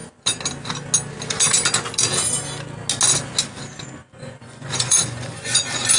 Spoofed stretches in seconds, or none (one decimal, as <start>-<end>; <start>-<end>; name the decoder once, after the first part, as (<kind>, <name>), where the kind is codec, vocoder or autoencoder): 4.0-5.6 (vocoder, Vocos)